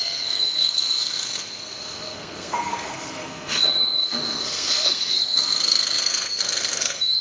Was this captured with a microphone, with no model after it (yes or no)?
no